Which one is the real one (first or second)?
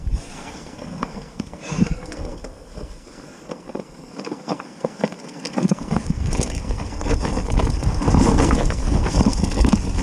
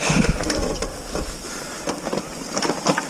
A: second